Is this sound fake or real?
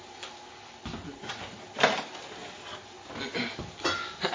real